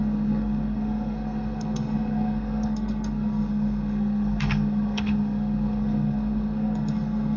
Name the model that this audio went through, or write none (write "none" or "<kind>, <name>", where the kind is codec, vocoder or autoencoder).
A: codec, SNAC